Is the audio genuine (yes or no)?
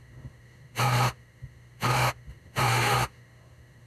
no